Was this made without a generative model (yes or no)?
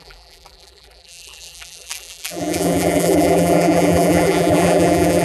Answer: no